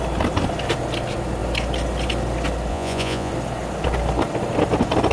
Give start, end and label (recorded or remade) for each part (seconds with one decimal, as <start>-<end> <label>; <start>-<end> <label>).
0.0-2.7 recorded; 2.7-3.3 remade; 3.3-5.1 recorded